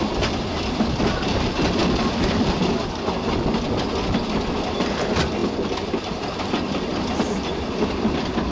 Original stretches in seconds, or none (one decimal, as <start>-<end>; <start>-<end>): 0.0-8.5